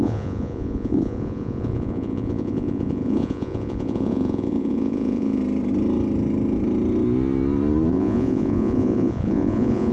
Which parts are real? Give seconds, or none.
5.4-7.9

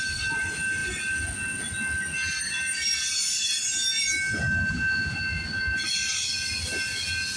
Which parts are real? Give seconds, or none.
0.0-7.4

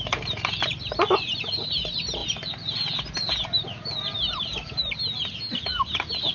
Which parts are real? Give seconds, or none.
0.0-6.3

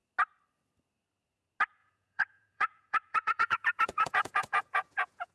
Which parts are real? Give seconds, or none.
0.0-1.8

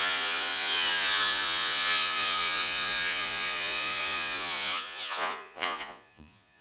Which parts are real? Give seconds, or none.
none

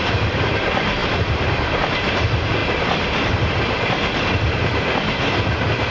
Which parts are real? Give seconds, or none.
0.0-5.9